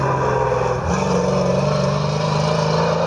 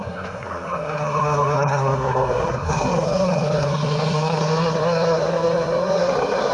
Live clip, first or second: first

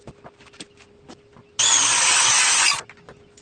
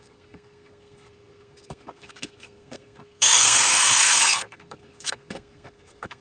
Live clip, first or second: first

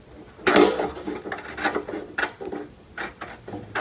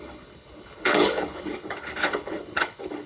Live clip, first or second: first